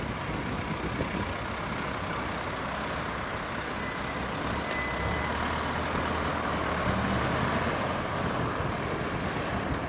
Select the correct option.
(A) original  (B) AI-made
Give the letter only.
A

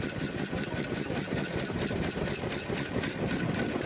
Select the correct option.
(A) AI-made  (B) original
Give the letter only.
B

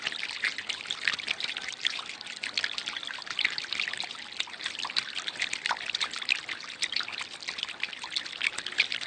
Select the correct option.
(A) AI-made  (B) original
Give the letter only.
B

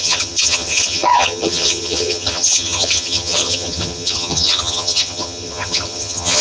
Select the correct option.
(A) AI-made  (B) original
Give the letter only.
A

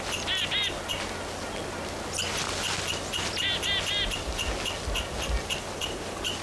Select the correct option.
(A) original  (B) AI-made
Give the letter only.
A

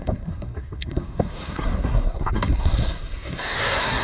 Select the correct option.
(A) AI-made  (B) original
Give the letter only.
A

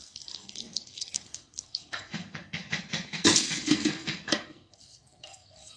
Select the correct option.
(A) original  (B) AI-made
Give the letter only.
B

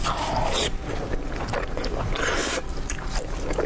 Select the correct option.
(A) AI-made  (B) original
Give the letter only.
B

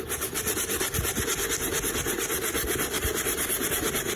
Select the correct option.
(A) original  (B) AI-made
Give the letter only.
A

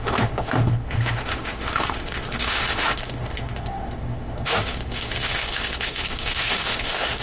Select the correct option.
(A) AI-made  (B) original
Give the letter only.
A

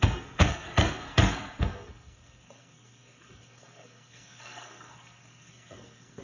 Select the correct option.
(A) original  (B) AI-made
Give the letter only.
B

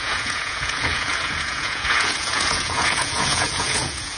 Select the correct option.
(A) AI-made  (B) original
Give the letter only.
A